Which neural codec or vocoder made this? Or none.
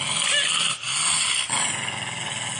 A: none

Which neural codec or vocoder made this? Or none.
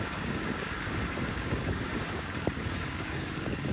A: codec, DAC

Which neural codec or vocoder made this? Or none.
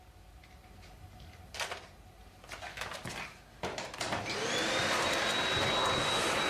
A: none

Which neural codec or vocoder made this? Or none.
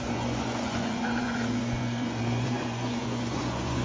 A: vocoder, Vocos